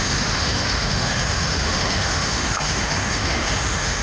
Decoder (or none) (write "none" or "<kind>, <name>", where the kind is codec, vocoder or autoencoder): autoencoder, DAC-VAE